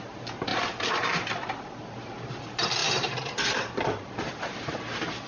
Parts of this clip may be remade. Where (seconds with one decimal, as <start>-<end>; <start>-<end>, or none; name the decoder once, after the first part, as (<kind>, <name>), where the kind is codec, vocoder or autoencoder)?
0.5-2.4 (vocoder, BigVGAN v2); 2.8-4.4